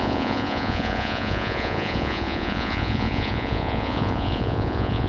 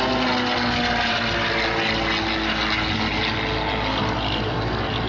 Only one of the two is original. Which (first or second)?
second